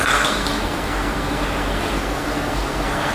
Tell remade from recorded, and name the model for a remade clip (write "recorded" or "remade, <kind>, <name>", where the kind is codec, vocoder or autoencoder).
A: remade, codec, SNAC